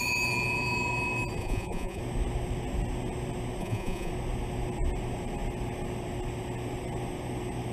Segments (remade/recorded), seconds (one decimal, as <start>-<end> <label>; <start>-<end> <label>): 0.0-1.4 recorded; 1.4-2.0 remade; 2.0-3.6 recorded; 3.6-4.1 remade; 4.1-7.7 recorded